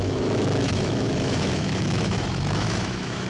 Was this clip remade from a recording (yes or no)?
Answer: yes